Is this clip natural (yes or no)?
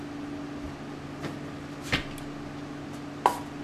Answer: yes